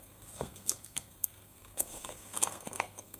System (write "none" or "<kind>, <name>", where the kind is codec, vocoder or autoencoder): codec, SNAC